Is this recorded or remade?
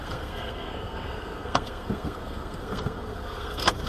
remade